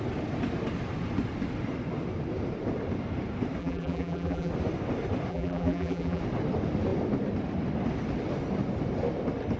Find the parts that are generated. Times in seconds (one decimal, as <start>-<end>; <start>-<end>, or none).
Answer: 3.6-4.5; 5.3-6.2